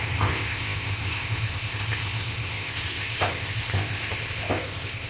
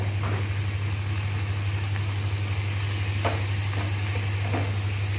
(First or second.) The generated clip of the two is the first